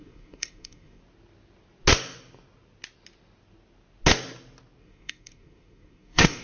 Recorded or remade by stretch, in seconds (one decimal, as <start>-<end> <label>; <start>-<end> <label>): 0.0-1.0 remade; 1.0-4.8 recorded; 4.8-6.4 remade